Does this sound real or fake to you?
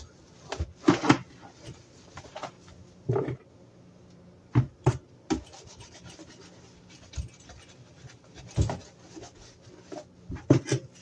real